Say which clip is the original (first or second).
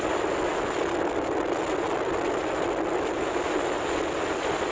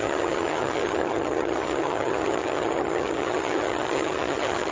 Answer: first